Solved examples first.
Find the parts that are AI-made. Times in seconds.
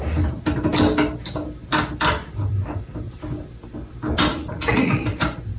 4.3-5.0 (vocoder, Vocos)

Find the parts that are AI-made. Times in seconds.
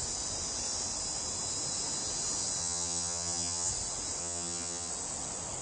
2.6-3.7 (vocoder, HiFi-GAN); 4.2-4.9